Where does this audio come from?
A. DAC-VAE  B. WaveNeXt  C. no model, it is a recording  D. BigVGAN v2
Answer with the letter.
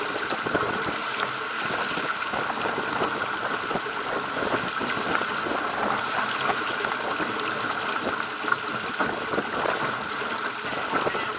C